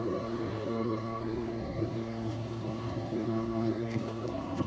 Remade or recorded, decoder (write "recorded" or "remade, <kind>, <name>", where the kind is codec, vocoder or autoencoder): remade, codec, SNAC